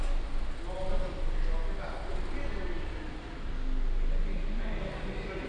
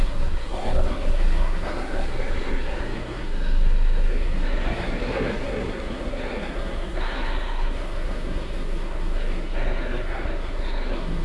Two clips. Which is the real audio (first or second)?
first